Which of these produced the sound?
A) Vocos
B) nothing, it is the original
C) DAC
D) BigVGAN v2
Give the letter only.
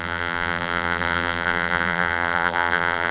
D